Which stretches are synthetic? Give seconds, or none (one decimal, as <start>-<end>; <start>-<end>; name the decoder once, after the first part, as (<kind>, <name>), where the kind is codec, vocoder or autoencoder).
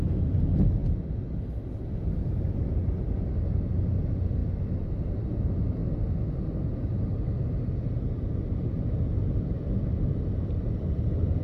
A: none